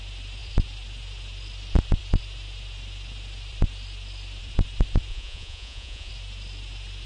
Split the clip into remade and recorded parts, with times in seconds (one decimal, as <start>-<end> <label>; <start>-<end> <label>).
0.0-5.1 recorded; 5.1-6.1 remade; 6.1-7.1 recorded